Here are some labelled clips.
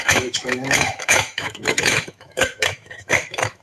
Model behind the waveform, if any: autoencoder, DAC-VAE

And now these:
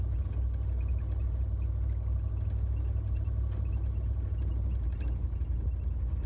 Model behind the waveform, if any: none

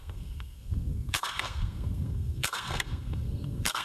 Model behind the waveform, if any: codec, SNAC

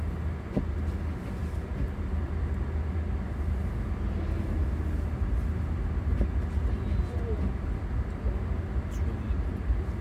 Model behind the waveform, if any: none